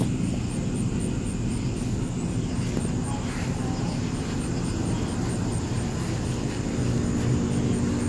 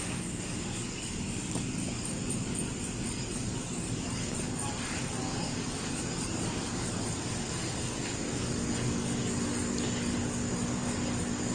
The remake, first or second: second